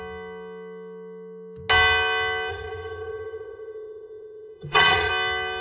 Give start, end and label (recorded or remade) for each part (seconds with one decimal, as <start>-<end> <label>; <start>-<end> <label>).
0.0-2.5 recorded; 2.5-5.1 remade; 5.1-5.6 recorded